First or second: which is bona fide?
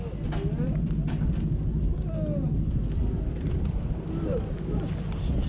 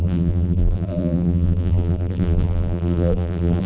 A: first